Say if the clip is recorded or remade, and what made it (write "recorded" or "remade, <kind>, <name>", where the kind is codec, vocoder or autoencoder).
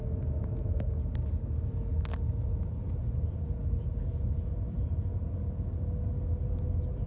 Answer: recorded